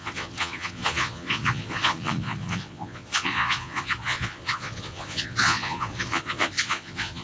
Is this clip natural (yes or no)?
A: no